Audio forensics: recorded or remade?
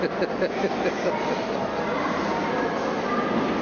recorded